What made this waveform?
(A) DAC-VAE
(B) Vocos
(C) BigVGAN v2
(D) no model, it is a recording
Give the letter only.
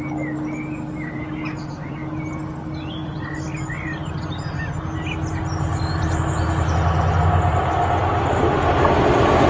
D